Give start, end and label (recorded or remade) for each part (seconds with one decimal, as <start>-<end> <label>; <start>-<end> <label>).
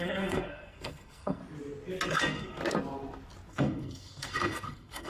0.0-1.4 remade; 1.4-2.1 recorded; 2.1-2.6 remade; 2.6-3.5 recorded; 3.5-5.1 remade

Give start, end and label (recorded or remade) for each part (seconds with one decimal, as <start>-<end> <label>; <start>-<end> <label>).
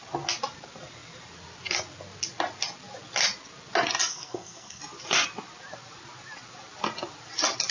0.0-4.1 recorded; 4.1-4.8 remade; 4.8-7.7 recorded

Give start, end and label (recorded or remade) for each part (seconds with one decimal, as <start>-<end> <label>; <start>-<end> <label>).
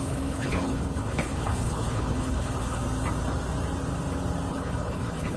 0.0-2.8 remade; 2.8-4.5 recorded; 4.5-5.4 remade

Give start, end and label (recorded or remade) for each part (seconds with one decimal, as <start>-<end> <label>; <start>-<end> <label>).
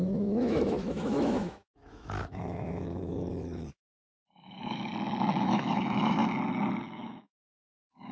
0.0-4.9 remade; 4.9-5.4 recorded; 5.4-6.2 remade; 6.2-6.8 recorded; 6.8-8.1 remade